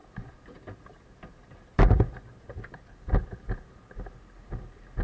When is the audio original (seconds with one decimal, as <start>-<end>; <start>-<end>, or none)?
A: 0.0-5.0